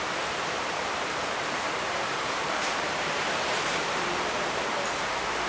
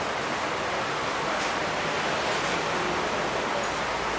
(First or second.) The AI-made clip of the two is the first